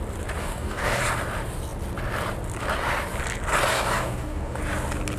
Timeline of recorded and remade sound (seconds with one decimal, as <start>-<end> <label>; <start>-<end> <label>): 0.0-0.4 recorded; 0.4-1.0 remade; 1.0-3.7 recorded; 3.7-4.6 remade; 4.6-5.2 recorded